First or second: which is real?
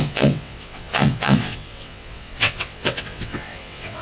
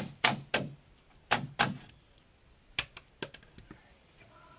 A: second